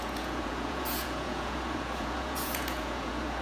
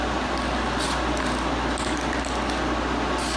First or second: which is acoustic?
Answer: second